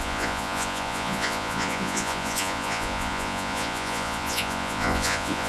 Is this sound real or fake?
fake